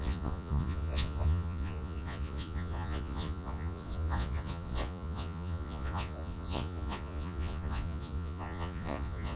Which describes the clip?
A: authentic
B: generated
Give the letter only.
B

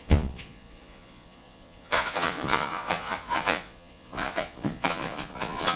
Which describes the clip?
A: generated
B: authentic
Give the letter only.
A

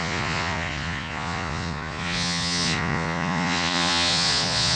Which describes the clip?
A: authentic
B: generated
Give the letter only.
B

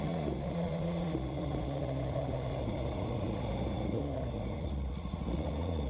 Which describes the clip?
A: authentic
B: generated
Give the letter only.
B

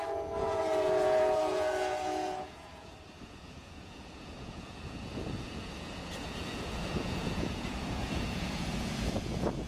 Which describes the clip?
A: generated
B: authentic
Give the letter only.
A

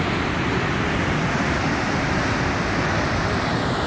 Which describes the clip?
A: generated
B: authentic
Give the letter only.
B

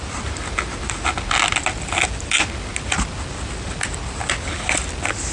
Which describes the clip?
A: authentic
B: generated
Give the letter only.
A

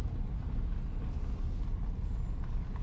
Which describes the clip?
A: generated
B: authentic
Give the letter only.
B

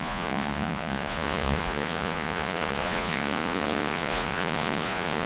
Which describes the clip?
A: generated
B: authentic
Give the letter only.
A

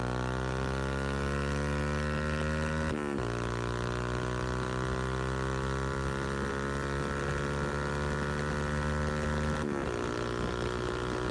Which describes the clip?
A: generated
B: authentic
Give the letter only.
B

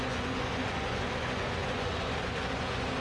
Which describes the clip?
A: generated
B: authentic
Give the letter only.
A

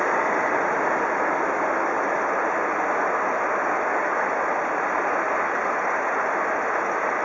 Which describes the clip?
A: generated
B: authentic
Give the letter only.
B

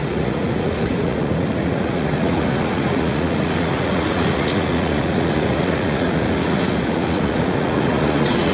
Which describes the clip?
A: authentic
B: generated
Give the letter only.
B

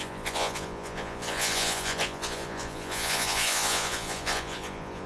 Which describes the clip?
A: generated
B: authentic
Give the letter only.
A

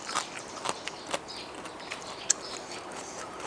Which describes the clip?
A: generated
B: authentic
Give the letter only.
B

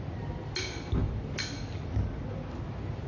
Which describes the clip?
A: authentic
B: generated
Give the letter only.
A